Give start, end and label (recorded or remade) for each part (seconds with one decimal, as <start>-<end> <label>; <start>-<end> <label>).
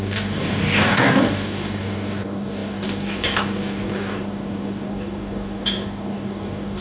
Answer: 0.0-6.8 remade